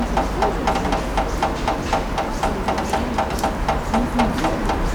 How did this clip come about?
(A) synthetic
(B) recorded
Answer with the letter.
B